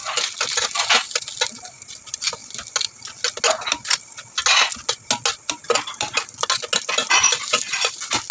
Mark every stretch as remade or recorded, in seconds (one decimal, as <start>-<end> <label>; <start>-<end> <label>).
0.0-8.3 recorded